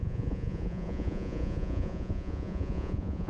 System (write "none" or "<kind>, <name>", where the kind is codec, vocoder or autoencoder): vocoder, Vocos